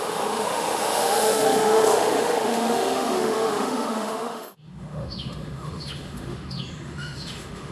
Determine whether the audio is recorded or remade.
remade